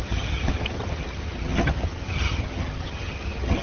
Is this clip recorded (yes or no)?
no